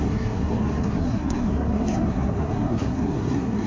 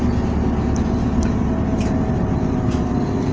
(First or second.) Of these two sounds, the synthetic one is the first